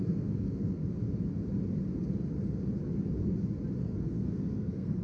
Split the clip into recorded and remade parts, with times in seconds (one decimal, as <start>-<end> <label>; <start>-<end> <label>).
0.0-0.8 remade; 0.8-3.8 recorded; 3.8-5.0 remade